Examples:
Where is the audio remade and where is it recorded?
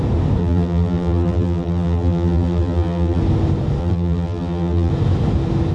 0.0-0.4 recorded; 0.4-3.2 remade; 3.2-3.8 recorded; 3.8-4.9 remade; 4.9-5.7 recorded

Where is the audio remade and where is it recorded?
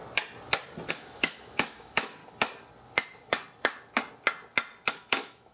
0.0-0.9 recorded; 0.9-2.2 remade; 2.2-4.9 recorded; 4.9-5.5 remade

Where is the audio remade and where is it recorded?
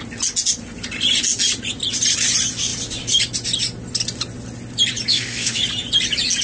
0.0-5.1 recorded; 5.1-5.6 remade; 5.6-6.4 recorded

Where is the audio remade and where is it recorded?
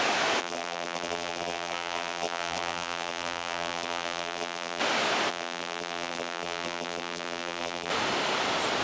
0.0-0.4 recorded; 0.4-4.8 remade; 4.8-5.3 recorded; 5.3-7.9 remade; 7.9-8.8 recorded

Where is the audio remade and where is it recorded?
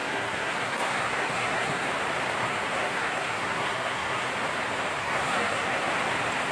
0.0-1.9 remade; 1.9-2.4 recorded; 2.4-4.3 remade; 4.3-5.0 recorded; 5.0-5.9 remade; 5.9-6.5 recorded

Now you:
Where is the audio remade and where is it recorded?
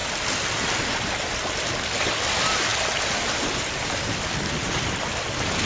0.0-5.7 recorded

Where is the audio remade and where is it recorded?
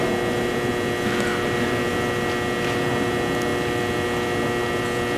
0.0-5.2 recorded